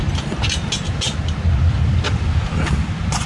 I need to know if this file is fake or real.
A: real